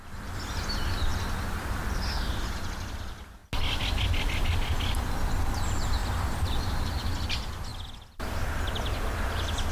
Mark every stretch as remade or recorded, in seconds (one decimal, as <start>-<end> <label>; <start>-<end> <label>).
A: 0.0-3.4 remade; 3.4-4.0 recorded; 4.0-7.7 remade; 7.7-8.7 recorded; 8.7-9.7 remade

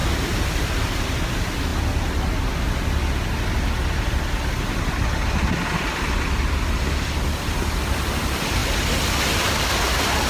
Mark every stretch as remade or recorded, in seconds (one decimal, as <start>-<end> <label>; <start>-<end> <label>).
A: 0.0-1.7 remade; 1.7-5.5 recorded; 5.5-8.6 remade; 8.6-9.1 recorded; 9.1-10.3 remade

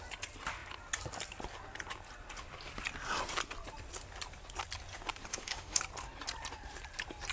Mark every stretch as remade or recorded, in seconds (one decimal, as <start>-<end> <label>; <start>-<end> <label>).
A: 0.0-5.3 recorded; 5.3-5.8 remade; 5.8-7.3 recorded